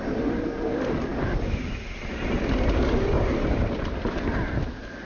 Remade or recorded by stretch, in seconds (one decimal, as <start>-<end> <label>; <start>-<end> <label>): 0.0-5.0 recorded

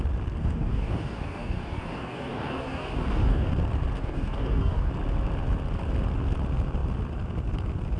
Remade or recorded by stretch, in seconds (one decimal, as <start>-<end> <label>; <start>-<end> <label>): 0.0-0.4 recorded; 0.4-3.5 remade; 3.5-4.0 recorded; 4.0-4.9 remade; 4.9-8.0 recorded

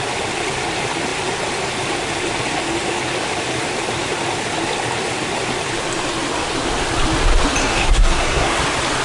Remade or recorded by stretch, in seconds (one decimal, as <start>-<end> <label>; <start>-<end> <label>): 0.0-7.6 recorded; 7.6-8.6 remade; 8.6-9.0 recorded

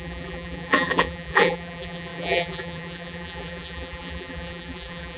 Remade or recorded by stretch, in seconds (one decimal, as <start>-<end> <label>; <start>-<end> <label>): 0.0-5.2 remade

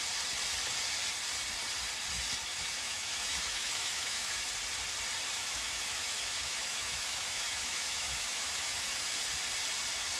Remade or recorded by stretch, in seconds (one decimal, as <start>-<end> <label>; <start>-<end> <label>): 0.0-2.5 recorded; 2.5-4.5 remade; 4.5-5.4 recorded; 5.4-9.2 remade; 9.2-10.2 recorded

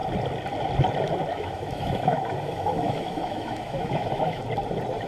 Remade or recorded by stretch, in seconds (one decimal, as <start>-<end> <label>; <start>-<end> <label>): 0.0-1.3 recorded; 1.3-4.4 remade; 4.4-5.1 recorded

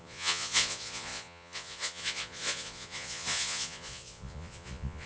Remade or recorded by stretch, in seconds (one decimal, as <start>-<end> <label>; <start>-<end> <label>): 0.0-5.1 remade

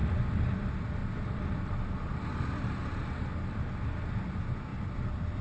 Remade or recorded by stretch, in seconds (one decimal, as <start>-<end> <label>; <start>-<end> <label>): 0.0-5.4 recorded